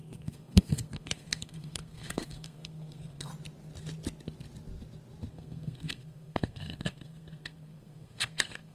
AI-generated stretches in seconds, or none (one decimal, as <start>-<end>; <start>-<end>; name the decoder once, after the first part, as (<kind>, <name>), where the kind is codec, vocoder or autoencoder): 0.0-3.3 (codec, SNAC); 5.3-8.7